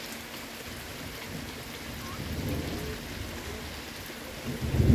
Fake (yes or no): no